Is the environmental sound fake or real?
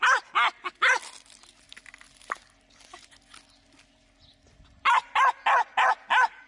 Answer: real